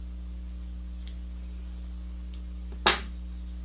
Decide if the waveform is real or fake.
real